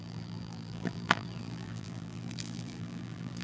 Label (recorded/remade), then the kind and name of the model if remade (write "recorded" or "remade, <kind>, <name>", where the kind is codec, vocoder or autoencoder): remade, vocoder, BigVGAN v2